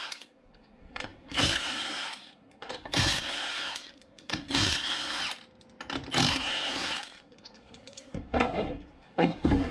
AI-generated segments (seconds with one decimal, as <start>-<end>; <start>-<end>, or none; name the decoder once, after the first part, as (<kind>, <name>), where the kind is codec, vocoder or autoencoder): 0.0-5.2 (codec, SNAC); 6.3-9.7